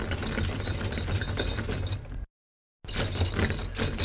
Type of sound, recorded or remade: recorded